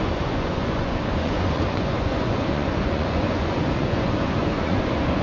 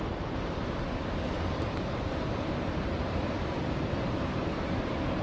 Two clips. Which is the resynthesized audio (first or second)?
first